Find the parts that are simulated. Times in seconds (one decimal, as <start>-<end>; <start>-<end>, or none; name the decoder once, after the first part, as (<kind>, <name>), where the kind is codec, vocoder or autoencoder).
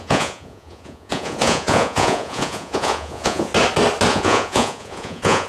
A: 0.0-3.5 (vocoder, Vocos); 4.1-5.5